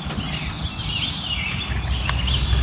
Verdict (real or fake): real